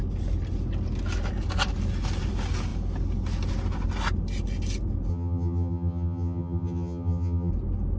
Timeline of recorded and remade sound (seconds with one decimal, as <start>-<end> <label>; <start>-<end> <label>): 0.0-5.1 recorded; 5.1-7.5 remade; 7.5-8.0 recorded